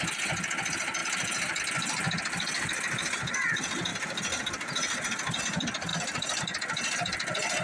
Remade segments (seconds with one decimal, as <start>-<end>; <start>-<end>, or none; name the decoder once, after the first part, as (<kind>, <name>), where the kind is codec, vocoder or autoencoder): 1.0-1.6 (vocoder, BigVGAN v2); 3.9-5.4; 5.9-6.4